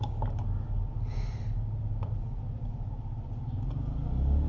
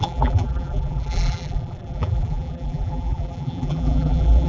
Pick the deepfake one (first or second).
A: second